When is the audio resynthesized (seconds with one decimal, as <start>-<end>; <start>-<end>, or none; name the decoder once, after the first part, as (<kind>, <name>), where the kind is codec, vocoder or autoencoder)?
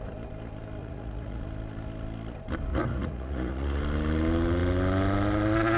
0.8-1.4 (vocoder, Vocos); 2.7-3.8